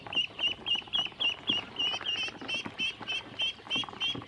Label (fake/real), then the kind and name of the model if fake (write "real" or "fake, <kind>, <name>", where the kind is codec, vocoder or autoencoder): real